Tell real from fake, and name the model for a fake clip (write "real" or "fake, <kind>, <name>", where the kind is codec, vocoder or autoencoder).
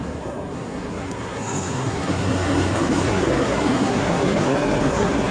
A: fake, codec, SNAC